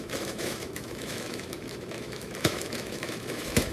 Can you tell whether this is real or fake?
fake